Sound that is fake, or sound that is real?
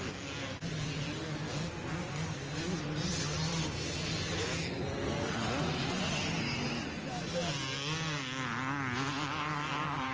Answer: real